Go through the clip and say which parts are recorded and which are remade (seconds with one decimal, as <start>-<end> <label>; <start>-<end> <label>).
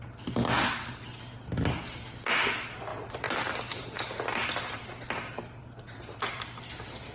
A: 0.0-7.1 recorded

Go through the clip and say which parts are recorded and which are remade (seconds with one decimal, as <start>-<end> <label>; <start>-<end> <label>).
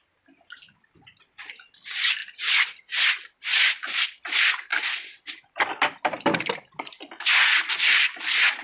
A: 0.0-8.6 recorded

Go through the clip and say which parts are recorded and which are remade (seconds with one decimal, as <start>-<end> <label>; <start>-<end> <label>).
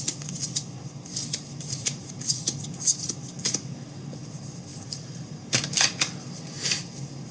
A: 0.0-1.2 recorded; 1.2-2.3 remade; 2.3-4.7 recorded; 4.7-5.3 remade; 5.3-7.3 recorded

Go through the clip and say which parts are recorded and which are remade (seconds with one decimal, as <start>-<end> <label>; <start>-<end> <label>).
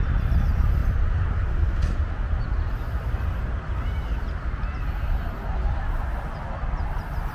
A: 0.0-0.8 recorded; 0.8-1.8 remade; 1.8-7.3 recorded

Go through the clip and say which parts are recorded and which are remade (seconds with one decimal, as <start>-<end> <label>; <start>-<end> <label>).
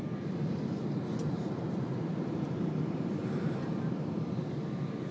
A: 0.0-1.2 recorded; 1.2-4.3 remade; 4.3-5.1 recorded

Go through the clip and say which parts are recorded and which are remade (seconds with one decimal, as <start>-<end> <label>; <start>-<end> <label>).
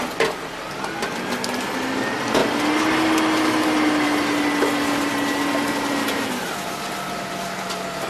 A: 0.0-8.1 recorded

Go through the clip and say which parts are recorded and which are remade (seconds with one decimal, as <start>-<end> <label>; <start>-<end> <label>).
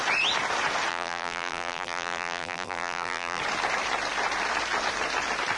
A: 0.0-0.9 recorded; 0.9-3.4 remade; 3.4-5.6 recorded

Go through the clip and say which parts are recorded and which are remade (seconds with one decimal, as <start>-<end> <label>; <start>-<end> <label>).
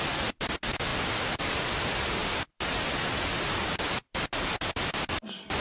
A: 0.0-2.2 remade; 2.2-4.9 recorded; 4.9-5.6 remade